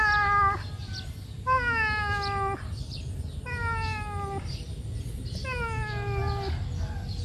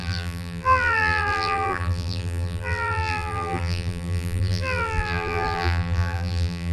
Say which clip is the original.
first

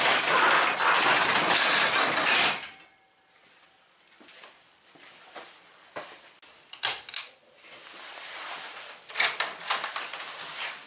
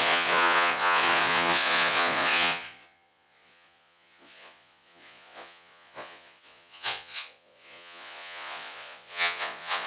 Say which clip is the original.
first